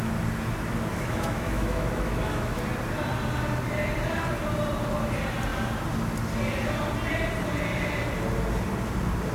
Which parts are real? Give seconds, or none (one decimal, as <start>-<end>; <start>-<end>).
0.0-0.9; 2.7-9.3